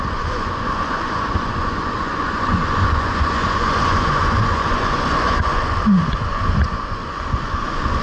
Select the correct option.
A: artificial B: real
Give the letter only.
A